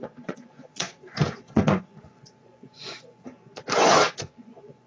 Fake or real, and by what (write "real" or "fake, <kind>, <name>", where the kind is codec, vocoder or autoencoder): fake, vocoder, Vocos